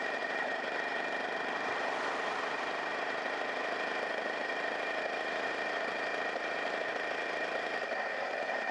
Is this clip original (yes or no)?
no